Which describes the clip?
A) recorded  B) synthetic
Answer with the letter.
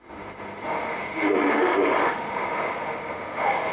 B